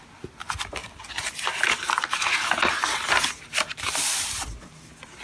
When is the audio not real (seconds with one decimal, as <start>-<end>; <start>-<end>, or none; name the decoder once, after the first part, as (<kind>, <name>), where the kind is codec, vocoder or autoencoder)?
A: none